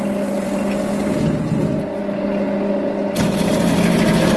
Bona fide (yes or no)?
yes